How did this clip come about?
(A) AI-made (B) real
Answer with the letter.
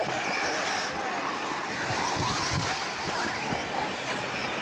B